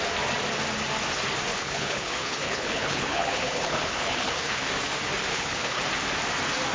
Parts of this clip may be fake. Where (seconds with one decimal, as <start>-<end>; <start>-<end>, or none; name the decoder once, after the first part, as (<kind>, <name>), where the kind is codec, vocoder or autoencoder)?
1.5-4.7 (codec, HILCodec); 5.3-5.8